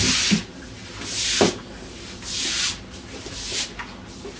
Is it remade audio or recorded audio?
recorded